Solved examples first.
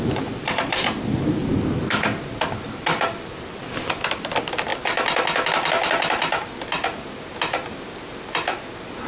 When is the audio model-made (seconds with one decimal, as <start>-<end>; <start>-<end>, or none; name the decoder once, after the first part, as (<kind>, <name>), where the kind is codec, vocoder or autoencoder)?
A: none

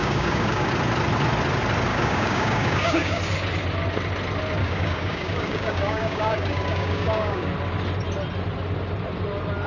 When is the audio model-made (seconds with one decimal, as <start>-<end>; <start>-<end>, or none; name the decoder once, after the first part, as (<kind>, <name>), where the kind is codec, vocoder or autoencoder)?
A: 0.0-0.7 (codec, DAC); 1.9-3.2; 4.6-7.5

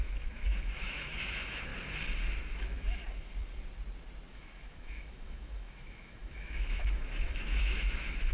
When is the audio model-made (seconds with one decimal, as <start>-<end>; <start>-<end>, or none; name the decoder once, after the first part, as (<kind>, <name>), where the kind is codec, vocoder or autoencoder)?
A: 0.0-1.7 (autoencoder, DAC-VAE); 2.4-3.0; 4.3-8.3